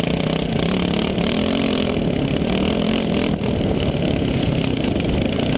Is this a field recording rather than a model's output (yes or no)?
yes